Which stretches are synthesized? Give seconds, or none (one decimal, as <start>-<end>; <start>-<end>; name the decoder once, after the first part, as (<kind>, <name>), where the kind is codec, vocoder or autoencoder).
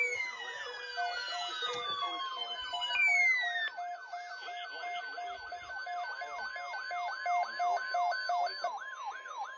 none